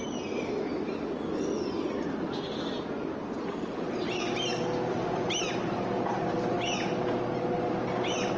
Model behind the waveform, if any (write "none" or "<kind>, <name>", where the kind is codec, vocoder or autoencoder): none